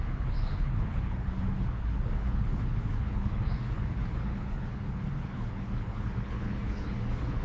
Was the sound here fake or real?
fake